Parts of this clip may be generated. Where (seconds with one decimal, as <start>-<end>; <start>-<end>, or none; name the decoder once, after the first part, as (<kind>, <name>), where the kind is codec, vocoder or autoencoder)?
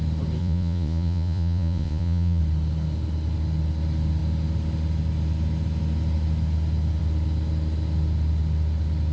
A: 0.4-2.4 (vocoder, Vocos)